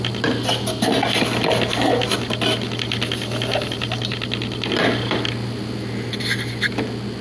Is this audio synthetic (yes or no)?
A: no